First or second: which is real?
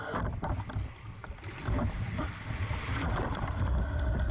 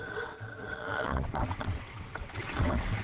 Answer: first